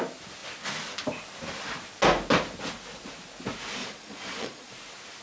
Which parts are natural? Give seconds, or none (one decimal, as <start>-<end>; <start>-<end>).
0.0-3.8; 4.7-5.2